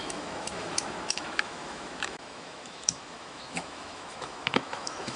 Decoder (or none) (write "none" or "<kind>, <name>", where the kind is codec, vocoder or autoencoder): autoencoder, DAC-VAE